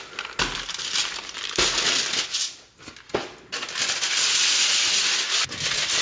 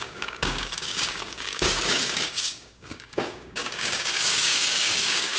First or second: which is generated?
second